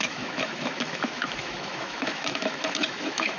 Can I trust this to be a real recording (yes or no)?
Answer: no